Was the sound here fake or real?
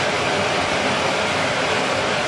real